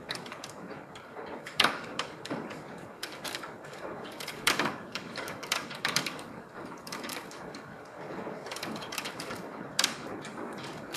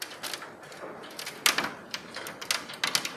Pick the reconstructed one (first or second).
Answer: first